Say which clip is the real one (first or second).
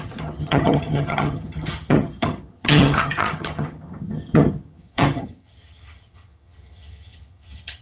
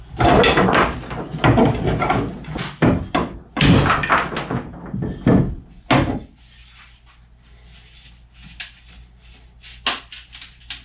second